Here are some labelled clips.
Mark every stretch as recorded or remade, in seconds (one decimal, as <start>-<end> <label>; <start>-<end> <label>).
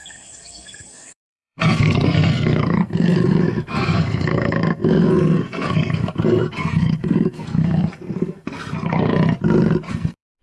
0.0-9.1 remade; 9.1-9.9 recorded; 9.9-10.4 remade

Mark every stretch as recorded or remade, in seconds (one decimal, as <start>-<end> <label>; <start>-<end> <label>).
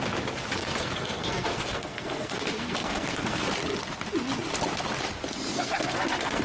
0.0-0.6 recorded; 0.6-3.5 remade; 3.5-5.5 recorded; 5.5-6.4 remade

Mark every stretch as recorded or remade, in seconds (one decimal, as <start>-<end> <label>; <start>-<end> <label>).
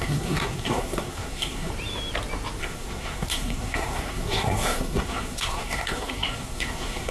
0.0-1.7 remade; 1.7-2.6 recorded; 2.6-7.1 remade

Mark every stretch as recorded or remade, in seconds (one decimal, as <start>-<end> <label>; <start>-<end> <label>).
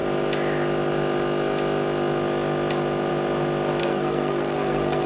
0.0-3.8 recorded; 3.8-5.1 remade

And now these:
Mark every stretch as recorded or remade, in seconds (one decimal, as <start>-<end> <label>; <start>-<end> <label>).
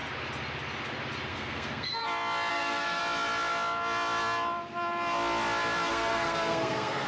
0.0-1.3 recorded; 1.3-2.0 remade; 2.0-2.5 recorded; 2.5-3.0 remade; 3.0-5.9 recorded; 5.9-7.1 remade